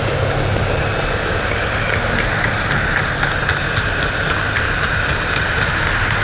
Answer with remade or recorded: recorded